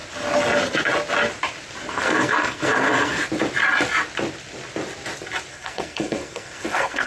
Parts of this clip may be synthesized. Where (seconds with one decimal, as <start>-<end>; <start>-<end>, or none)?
1.9-3.2; 5.5-7.1